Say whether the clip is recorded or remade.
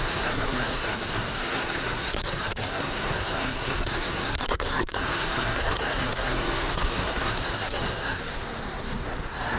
remade